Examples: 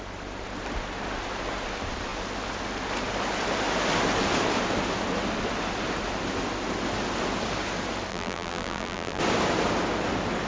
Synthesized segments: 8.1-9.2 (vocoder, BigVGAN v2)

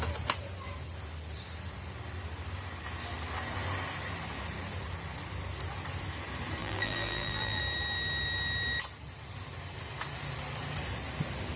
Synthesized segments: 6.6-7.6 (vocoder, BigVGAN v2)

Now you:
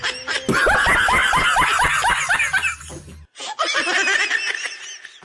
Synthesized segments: none